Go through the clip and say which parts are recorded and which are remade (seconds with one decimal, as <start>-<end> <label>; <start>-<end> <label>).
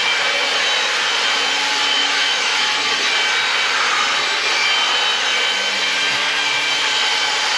0.0-1.9 recorded; 1.9-2.8 remade; 2.8-7.6 recorded